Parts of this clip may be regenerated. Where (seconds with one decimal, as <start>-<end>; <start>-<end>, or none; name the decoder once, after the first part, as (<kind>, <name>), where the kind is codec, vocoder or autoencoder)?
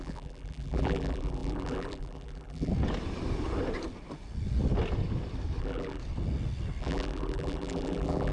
0.0-2.7 (vocoder, BigVGAN v2); 5.6-6.0; 6.8-8.3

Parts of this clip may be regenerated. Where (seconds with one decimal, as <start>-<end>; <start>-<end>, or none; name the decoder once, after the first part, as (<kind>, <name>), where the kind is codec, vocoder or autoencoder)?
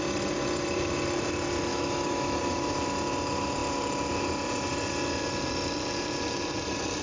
1.7-2.4 (autoencoder, DAC-VAE)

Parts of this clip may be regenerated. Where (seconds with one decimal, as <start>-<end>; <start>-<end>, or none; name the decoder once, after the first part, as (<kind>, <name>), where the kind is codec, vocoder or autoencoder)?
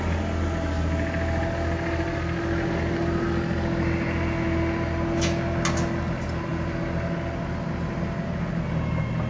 none